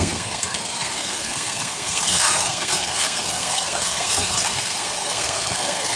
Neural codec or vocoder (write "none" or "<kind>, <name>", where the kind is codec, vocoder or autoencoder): codec, SNAC